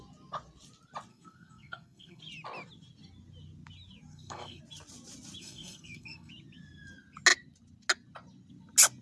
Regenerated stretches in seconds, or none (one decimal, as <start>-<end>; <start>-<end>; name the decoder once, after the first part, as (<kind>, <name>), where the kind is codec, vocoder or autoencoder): 1.1-2.2 (codec, SNAC); 4.1-4.6; 5.4-6.3